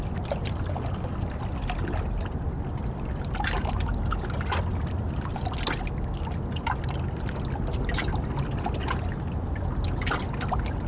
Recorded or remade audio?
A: recorded